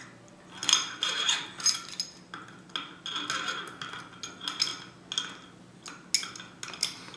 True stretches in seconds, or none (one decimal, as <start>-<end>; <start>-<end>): 0.0-7.2

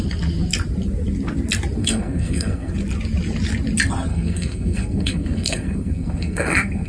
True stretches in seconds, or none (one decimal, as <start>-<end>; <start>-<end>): 0.0-1.8; 2.7-4.1

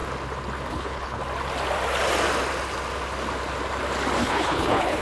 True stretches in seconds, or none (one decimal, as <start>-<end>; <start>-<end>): 0.0-0.7; 1.2-4.2